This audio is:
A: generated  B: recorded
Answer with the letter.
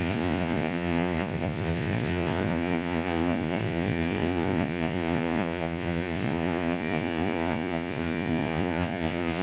A